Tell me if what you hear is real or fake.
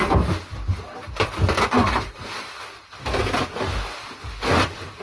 real